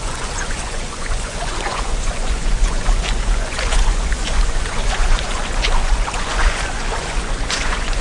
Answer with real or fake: fake